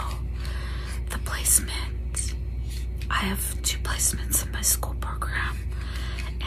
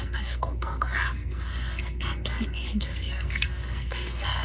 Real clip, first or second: first